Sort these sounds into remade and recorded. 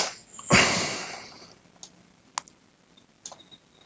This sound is recorded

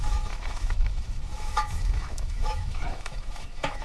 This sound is remade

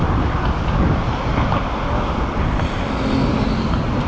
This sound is recorded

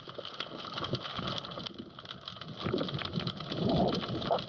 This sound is recorded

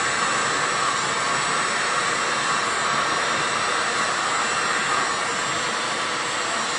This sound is recorded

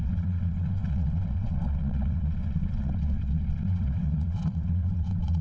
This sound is remade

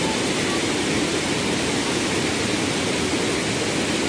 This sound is recorded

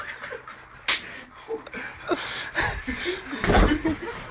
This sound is remade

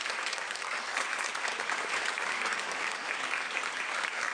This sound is remade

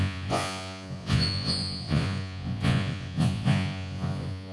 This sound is remade